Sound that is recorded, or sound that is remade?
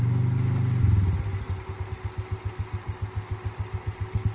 recorded